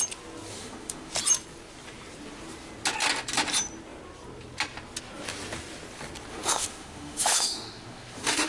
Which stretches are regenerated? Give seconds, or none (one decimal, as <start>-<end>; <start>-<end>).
0.5-1.1; 6.3-8.5